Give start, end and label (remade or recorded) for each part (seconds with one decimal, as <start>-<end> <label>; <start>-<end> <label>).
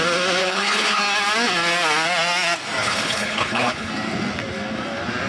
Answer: 0.0-0.4 recorded; 0.4-1.0 remade; 1.0-2.8 recorded; 2.8-3.9 remade; 3.9-5.3 recorded